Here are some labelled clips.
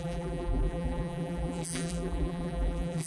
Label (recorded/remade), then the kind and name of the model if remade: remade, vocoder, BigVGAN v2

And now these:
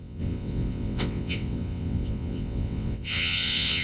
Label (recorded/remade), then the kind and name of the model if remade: remade, vocoder, WaveNeXt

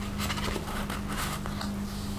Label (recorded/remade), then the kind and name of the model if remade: recorded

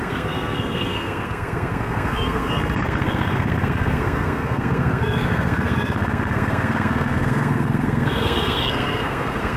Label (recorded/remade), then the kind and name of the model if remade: remade, codec, SNAC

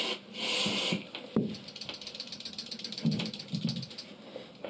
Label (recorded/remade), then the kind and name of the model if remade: recorded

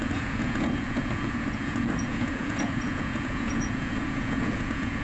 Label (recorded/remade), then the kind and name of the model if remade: remade, vocoder, Vocos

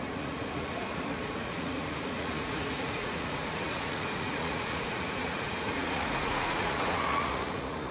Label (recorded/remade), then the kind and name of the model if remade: remade, vocoder, Vocos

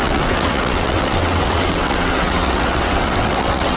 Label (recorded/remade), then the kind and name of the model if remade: remade, vocoder, WaveNeXt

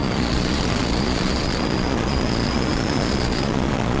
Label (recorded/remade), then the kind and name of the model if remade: remade, vocoder, Vocos